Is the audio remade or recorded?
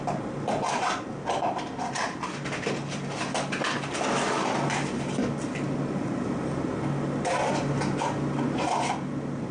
recorded